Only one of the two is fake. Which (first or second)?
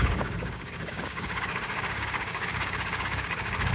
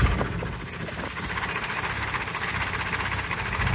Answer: first